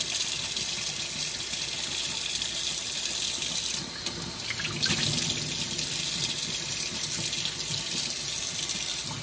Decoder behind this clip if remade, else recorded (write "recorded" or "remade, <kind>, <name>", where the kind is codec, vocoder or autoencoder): recorded